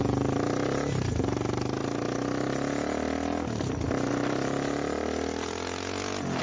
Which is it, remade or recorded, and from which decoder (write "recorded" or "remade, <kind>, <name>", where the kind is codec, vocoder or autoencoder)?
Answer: recorded